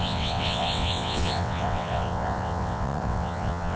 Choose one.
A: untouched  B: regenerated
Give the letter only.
B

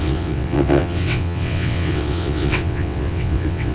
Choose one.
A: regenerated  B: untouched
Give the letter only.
A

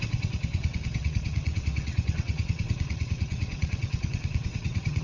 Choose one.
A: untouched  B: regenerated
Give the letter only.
B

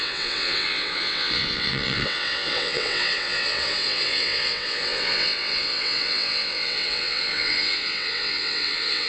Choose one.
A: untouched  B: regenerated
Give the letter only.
B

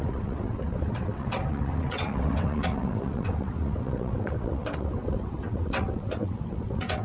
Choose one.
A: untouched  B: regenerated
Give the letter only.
B